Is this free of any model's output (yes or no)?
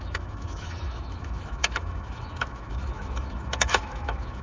no